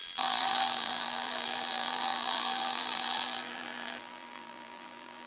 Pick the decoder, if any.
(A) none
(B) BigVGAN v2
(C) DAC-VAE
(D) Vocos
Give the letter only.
B